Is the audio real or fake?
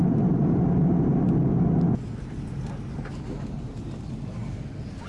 real